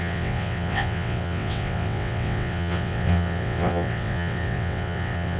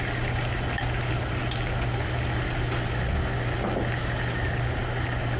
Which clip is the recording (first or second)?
second